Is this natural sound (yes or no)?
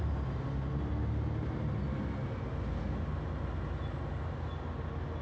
yes